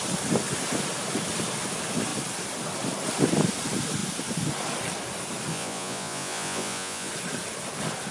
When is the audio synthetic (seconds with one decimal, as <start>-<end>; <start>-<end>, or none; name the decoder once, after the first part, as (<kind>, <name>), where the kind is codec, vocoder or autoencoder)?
5.5-7.1 (vocoder, Vocos)